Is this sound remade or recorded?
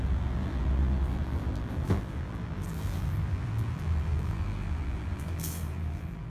remade